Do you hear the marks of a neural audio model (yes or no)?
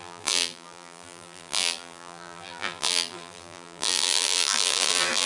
yes